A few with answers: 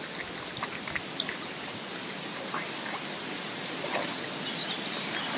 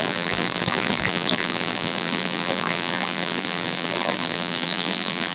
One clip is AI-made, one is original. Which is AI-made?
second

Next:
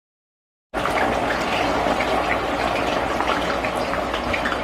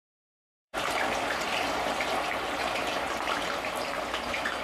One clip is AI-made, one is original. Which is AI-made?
second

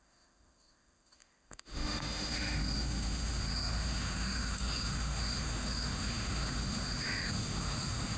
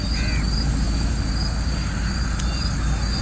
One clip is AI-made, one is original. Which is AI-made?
first